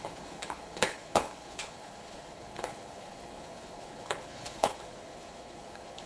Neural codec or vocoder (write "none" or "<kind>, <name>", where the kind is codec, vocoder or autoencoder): codec, HILCodec